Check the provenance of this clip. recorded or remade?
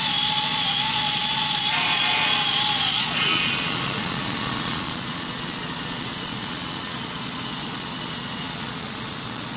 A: remade